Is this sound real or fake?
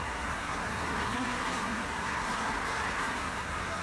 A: fake